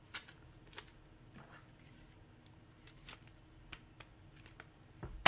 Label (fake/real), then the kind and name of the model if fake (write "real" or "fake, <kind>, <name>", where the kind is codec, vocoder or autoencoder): real